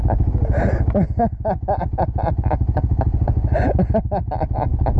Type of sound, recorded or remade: recorded